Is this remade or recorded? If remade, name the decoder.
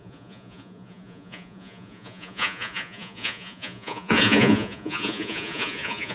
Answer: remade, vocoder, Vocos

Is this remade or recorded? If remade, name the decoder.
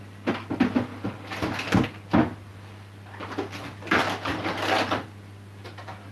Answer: recorded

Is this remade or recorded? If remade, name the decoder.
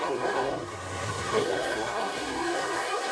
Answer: remade, codec, SNAC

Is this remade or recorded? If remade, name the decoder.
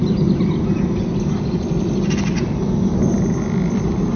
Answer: recorded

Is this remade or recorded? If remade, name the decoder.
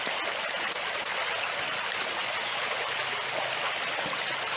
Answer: recorded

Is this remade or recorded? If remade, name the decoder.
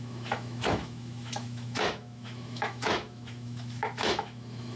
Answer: remade, autoencoder, DAC-VAE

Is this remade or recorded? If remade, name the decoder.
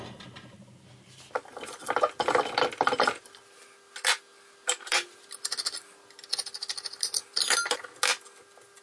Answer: recorded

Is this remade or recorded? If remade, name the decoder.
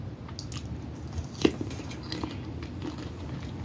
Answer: recorded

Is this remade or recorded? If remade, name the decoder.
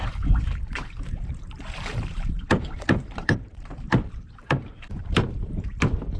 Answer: remade, vocoder, BigVGAN v2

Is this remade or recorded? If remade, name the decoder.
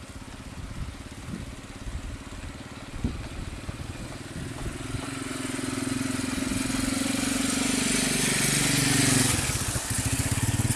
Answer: recorded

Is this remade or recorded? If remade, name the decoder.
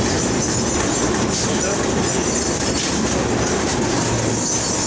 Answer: recorded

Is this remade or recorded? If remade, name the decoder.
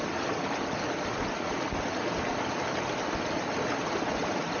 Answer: recorded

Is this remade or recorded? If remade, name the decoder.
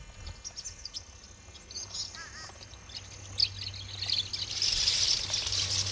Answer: recorded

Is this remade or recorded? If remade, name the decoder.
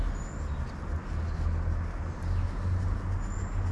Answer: recorded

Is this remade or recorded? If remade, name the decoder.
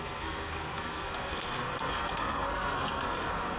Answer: remade, codec, SNAC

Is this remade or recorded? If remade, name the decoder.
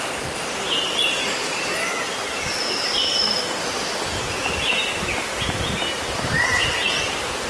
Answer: remade, vocoder, BigVGAN v2